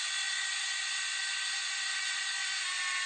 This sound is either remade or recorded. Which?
recorded